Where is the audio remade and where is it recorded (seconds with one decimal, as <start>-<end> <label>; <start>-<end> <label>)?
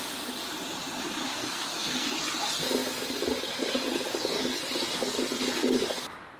0.0-1.3 recorded; 1.3-2.1 remade; 2.1-6.4 recorded